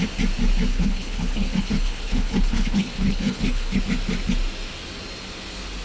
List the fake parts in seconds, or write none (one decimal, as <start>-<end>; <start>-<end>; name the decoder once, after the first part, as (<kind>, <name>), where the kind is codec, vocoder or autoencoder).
0.7-3.8 (codec, HILCodec)